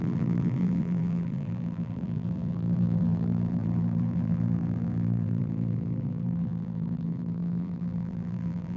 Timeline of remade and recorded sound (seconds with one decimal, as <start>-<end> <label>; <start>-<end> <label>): 0.0-8.8 remade